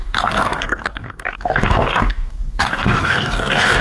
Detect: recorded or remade remade